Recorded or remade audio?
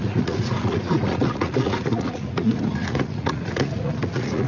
remade